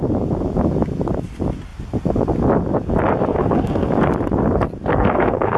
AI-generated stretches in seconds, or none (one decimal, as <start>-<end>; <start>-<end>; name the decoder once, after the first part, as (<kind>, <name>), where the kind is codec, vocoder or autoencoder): 3.3-3.9 (codec, SNAC); 4.9-5.6